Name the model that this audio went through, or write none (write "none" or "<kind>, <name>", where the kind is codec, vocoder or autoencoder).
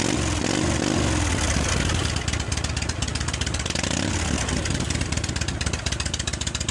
none